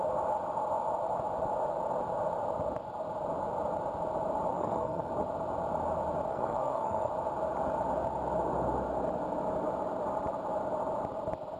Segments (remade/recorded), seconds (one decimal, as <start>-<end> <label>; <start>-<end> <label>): 0.0-4.5 recorded; 4.5-5.1 remade; 5.1-6.3 recorded; 6.3-7.1 remade; 7.1-11.6 recorded